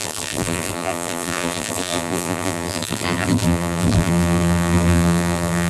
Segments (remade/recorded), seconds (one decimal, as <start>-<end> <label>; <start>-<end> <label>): 0.0-5.7 remade

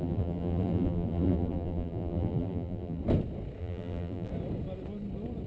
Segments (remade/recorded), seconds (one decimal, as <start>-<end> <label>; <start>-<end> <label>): 0.0-3.0 remade; 3.0-3.6 recorded; 3.6-4.3 remade; 4.3-5.5 recorded

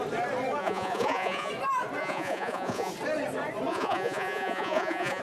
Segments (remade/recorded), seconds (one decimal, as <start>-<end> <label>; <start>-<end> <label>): 0.0-0.6 recorded; 0.6-1.5 remade; 1.5-2.0 recorded; 2.0-2.9 remade; 2.9-3.7 recorded; 3.7-5.2 remade

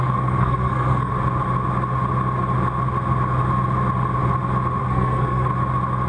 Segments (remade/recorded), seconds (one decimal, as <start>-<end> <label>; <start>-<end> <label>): 0.0-1.1 remade; 1.1-4.8 recorded; 4.8-5.5 remade; 5.5-6.1 recorded

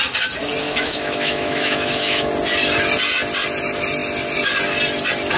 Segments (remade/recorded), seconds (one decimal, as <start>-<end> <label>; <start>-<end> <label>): 0.0-0.6 recorded; 0.6-2.3 remade; 2.3-5.4 recorded

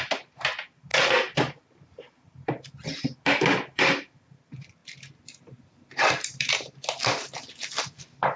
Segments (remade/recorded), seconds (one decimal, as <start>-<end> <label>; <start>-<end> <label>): 0.0-8.4 recorded

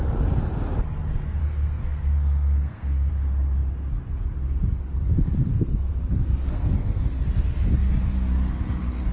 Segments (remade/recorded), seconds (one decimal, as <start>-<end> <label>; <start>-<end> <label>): 0.0-1.4 recorded; 1.4-3.1 remade; 3.1-5.5 recorded; 5.5-7.2 remade; 7.2-9.1 recorded